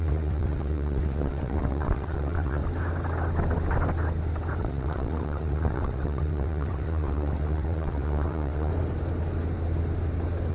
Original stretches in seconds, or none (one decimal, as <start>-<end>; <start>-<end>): 2.6-4.6; 8.7-10.5